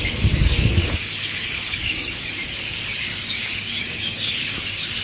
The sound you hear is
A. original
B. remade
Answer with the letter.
B